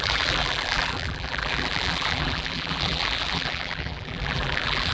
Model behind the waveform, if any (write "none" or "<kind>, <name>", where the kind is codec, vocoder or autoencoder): vocoder, BigVGAN v2